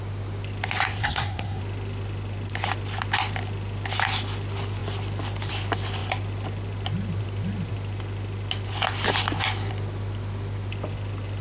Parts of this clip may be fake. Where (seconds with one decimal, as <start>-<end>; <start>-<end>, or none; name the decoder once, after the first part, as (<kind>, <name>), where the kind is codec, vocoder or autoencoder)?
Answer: 1.0-1.6 (codec, SNAC)